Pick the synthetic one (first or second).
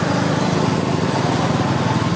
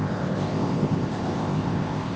second